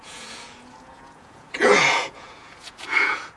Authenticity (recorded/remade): remade